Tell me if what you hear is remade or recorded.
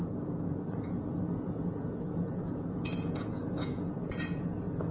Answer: remade